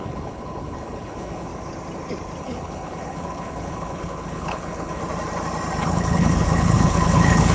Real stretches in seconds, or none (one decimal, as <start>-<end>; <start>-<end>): 1.5-2.4; 5.0-5.8